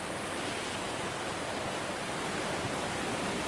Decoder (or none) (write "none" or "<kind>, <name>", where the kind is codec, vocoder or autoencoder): none